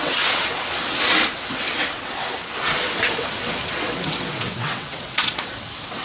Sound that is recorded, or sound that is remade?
remade